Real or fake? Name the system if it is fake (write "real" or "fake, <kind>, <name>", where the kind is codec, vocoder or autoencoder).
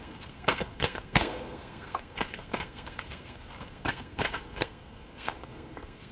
fake, codec, SNAC